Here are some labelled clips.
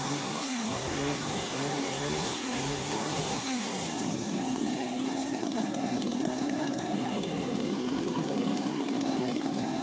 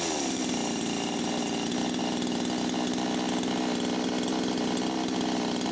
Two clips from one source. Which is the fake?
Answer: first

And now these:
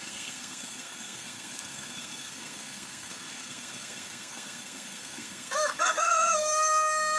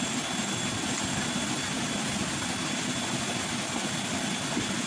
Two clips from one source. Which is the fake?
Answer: first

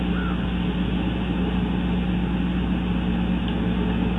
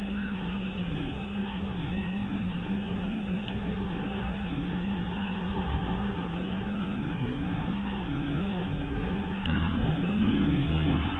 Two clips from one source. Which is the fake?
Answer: second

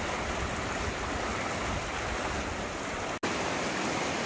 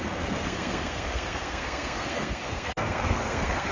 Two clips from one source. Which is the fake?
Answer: second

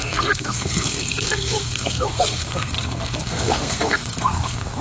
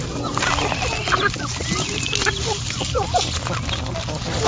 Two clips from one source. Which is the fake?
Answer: first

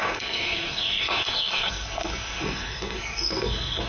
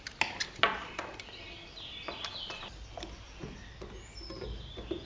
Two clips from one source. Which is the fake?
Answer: first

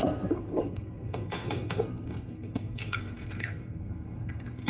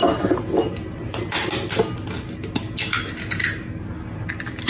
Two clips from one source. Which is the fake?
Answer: first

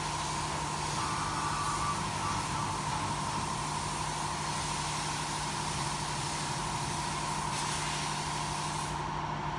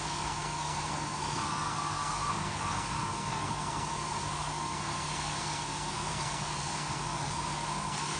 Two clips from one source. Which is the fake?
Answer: second